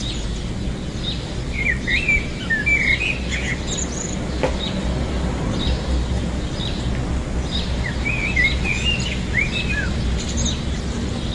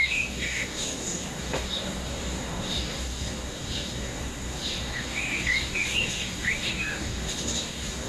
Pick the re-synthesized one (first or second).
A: second